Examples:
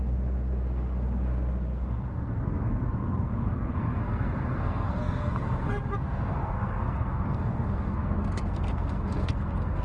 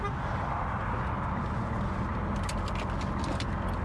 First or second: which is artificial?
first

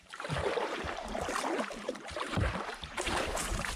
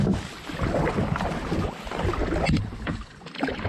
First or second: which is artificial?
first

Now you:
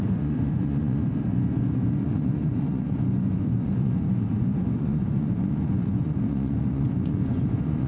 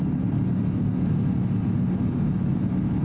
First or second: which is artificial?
first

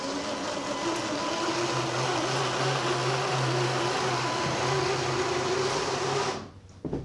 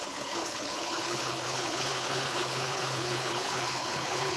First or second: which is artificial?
second